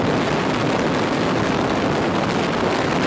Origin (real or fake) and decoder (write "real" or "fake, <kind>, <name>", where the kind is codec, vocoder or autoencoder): real